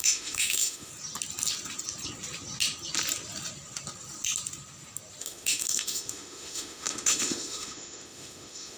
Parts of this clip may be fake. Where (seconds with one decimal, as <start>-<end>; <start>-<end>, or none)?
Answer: 0.0-0.9; 5.2-8.8